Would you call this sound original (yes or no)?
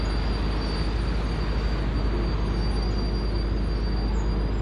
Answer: yes